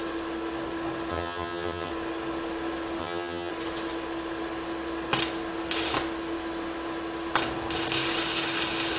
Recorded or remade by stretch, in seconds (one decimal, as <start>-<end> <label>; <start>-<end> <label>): 0.0-1.1 recorded; 1.1-1.9 remade; 1.9-3.0 recorded; 3.0-3.5 remade; 3.5-9.0 recorded